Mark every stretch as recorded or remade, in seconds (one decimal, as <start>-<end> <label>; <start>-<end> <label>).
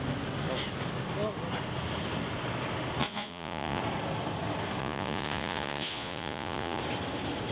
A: 0.0-3.0 recorded; 3.0-3.8 remade; 3.8-4.8 recorded; 4.8-6.8 remade; 6.8-7.5 recorded